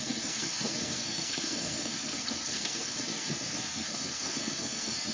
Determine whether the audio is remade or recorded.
remade